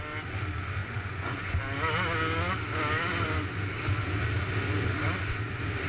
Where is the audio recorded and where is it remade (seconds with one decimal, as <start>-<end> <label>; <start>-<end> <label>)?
0.0-0.8 recorded; 0.8-1.6 remade; 1.6-5.9 recorded